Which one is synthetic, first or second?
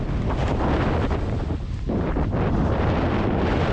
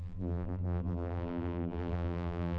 second